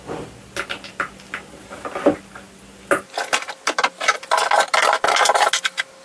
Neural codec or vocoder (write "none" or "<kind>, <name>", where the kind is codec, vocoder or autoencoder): none